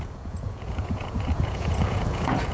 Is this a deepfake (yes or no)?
yes